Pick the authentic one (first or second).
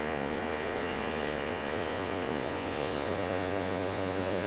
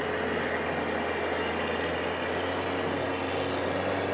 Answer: second